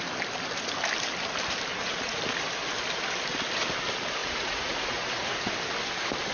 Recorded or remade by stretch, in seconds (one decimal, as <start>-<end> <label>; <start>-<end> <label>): 0.0-1.7 recorded; 1.7-2.2 remade; 2.2-4.2 recorded; 4.2-5.5 remade; 5.5-6.3 recorded